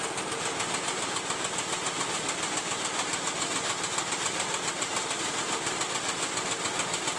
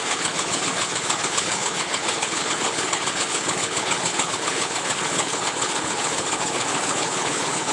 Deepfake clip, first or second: second